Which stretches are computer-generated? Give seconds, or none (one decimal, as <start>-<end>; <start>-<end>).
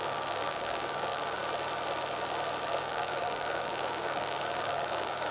0.0-1.4; 2.8-5.3